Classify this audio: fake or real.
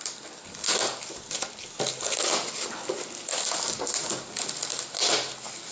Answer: real